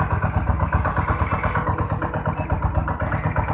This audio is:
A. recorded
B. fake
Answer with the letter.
A